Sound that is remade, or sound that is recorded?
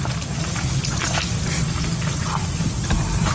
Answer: recorded